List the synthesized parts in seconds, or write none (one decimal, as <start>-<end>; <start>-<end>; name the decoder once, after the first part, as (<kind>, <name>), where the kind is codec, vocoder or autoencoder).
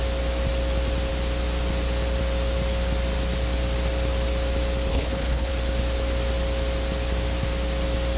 4.9-5.5 (codec, HILCodec)